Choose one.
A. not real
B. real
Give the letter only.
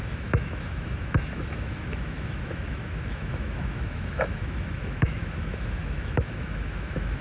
A